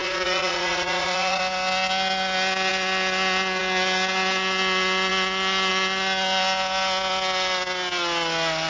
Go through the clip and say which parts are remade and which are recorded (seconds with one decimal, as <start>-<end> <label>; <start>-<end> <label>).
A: 0.0-1.4 remade; 1.4-8.7 recorded